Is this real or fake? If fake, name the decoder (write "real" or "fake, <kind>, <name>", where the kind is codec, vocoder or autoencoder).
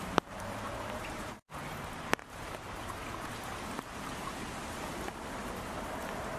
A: fake, vocoder, BigVGAN v2